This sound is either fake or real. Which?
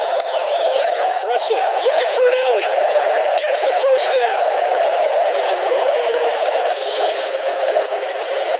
fake